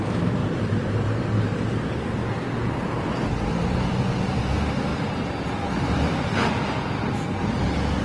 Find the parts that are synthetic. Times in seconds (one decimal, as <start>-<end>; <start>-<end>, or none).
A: 0.4-1.8; 4.9-6.3

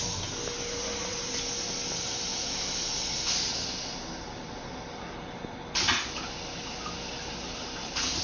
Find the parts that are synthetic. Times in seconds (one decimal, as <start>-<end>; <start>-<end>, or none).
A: 2.3-2.8

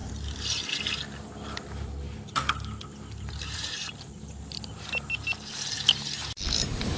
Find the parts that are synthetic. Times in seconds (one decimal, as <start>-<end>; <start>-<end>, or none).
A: 0.0-4.2

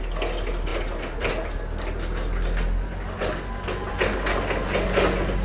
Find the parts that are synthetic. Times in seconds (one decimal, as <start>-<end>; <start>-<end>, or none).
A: none

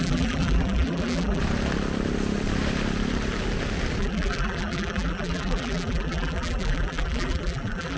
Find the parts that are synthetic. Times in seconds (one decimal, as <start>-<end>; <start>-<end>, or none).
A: 0.0-1.4; 4.0-8.0